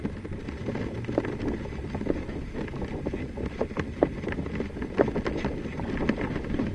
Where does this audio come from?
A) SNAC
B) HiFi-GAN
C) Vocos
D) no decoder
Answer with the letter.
D